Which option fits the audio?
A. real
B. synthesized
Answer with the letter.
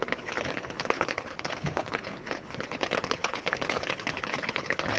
B